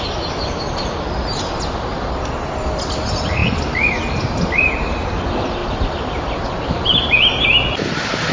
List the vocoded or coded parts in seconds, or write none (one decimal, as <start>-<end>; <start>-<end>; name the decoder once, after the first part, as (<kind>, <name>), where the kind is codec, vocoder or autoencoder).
none